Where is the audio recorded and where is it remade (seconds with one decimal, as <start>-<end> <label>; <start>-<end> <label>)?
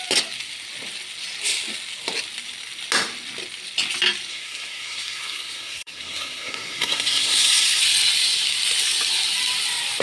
0.0-4.3 recorded; 4.3-7.8 remade; 7.8-10.0 recorded